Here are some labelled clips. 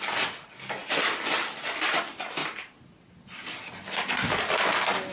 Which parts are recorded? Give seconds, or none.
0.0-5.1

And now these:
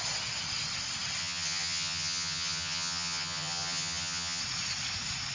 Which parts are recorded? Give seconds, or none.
0.0-1.2; 4.4-5.3

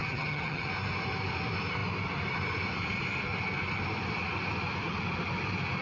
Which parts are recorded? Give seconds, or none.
0.7-5.8

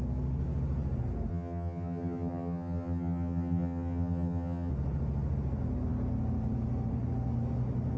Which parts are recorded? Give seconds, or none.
0.0-1.3; 4.7-8.0

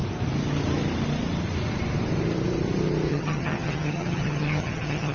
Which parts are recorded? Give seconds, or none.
0.0-3.1